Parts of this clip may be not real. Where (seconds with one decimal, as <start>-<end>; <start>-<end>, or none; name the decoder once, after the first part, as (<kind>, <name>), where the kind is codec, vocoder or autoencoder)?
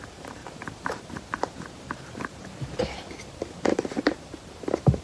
0.0-5.0 (vocoder, BigVGAN v2)